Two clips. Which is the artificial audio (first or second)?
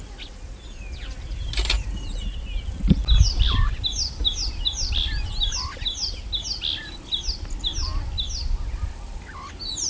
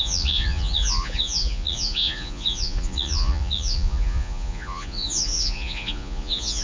second